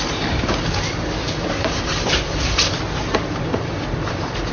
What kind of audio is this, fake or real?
fake